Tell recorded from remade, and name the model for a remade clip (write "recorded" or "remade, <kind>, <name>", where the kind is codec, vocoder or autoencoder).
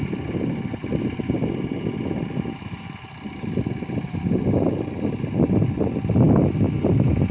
recorded